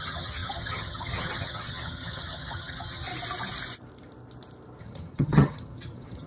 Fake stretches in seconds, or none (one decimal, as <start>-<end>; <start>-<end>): 0.0-3.1; 4.8-6.3